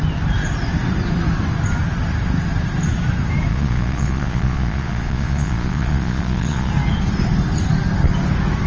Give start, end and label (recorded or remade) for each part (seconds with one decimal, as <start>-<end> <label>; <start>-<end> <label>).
0.0-3.5 recorded; 3.5-6.7 remade; 6.7-8.7 recorded